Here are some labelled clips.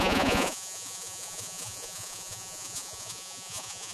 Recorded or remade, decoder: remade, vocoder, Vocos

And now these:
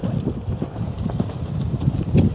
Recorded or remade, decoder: remade, vocoder, BigVGAN v2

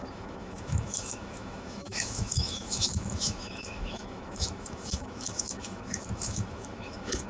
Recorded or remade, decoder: remade, autoencoder, DAC-VAE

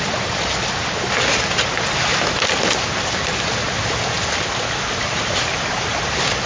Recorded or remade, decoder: recorded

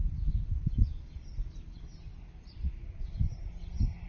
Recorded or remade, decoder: recorded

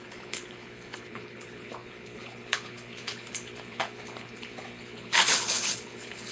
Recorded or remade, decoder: remade, codec, HILCodec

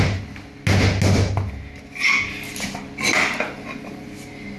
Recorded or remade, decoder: recorded